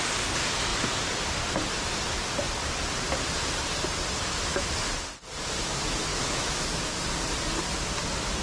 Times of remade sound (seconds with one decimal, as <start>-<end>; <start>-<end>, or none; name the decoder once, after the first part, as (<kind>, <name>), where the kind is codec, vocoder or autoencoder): 6.1-7.0 (autoencoder, DAC-VAE)